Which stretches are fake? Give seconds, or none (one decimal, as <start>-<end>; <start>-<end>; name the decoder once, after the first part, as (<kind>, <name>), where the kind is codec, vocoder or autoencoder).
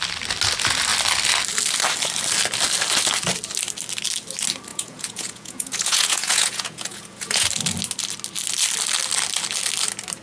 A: 4.7-7.5 (vocoder, Vocos)